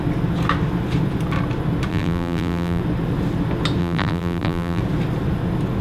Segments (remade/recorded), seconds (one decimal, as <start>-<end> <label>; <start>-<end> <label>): 0.0-1.9 recorded; 1.9-2.8 remade; 2.8-3.8 recorded; 3.8-4.8 remade; 4.8-5.8 recorded